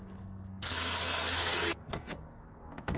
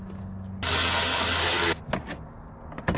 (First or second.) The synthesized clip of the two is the first